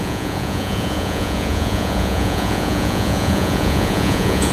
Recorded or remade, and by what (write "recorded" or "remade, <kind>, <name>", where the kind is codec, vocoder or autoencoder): remade, vocoder, Vocos